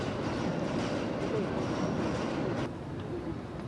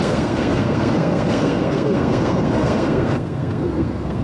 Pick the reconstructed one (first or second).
second